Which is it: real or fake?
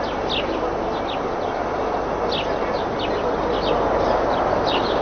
real